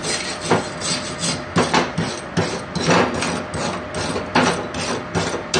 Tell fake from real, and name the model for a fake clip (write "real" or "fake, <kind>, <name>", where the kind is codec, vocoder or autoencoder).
real